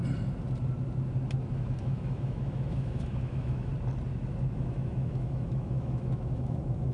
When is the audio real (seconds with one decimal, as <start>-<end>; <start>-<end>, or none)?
0.0-1.8; 3.7-4.5